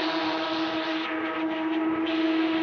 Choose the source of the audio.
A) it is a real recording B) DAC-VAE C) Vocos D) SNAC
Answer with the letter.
A